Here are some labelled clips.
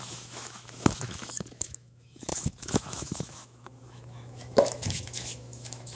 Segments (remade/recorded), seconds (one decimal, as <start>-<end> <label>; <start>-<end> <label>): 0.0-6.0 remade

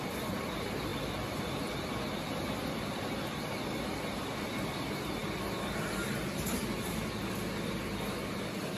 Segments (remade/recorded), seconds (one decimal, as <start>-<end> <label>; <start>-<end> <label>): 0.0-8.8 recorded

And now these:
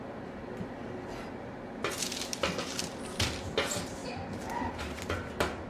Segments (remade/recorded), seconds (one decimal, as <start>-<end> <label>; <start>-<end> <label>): 0.0-5.7 recorded

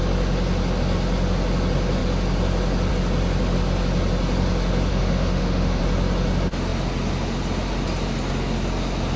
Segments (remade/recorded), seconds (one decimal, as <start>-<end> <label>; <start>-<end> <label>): 0.0-4.9 recorded; 4.9-5.8 remade; 5.8-9.2 recorded

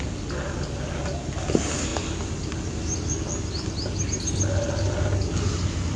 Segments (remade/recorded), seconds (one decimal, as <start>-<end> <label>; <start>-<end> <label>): 0.0-6.0 recorded

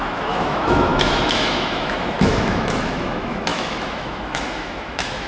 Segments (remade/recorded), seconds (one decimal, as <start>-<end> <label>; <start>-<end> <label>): 0.0-5.3 remade

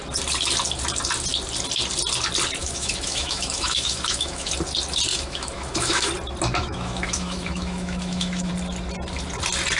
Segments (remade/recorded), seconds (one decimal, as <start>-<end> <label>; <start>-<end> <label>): 0.0-2.6 recorded; 2.6-4.5 remade; 4.5-5.1 recorded; 5.1-6.1 remade; 6.1-6.6 recorded; 6.6-8.5 remade; 8.5-9.8 recorded

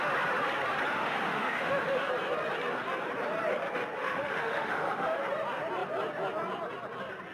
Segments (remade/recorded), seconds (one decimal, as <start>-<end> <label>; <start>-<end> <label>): 0.0-0.9 recorded; 0.9-2.1 remade; 2.1-4.0 recorded; 4.0-5.2 remade; 5.2-7.3 recorded